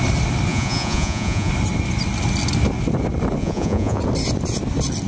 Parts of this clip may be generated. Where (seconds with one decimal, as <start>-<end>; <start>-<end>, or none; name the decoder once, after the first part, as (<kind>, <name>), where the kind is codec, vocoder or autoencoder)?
0.5-1.5 (vocoder, Vocos); 3.4-4.0